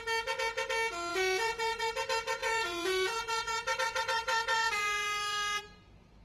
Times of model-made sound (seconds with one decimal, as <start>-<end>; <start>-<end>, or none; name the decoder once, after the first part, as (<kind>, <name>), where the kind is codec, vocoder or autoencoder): 1.1-1.9 (vocoder, Vocos); 2.4-5.6